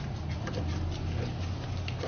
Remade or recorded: recorded